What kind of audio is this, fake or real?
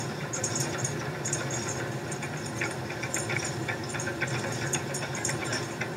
fake